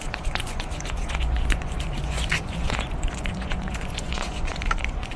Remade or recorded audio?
remade